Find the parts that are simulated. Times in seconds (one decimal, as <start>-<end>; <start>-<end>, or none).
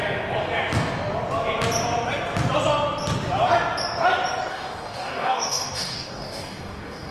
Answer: 4.5-7.1